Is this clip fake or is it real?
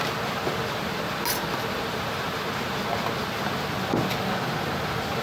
real